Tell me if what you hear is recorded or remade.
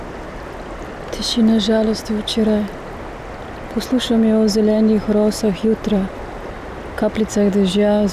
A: recorded